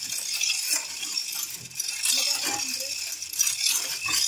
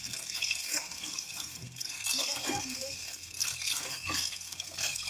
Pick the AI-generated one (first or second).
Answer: second